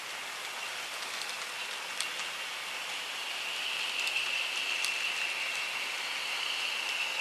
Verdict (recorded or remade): recorded